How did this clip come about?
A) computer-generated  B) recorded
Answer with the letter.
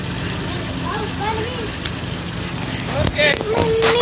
B